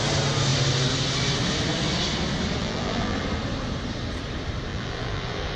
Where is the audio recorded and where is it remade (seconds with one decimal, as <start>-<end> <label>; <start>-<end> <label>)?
0.0-2.6 recorded; 2.6-3.2 remade; 3.2-4.7 recorded; 4.7-5.6 remade